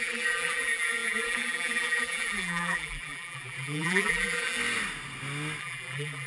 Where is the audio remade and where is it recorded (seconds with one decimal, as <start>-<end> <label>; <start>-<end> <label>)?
0.0-4.6 remade; 4.6-5.6 recorded; 5.6-6.3 remade